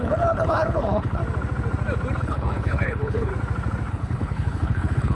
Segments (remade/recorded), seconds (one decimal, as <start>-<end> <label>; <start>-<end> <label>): 0.0-1.2 remade; 1.2-2.2 recorded; 2.2-3.3 remade; 3.3-3.9 recorded; 3.9-5.2 remade